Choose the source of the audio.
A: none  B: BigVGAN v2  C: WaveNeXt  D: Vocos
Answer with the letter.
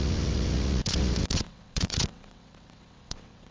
C